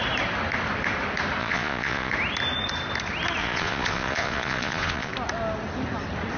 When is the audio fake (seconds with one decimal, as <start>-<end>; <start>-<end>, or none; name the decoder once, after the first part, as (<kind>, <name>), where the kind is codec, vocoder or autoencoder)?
1.4-2.1 (vocoder, Vocos); 3.4-5.1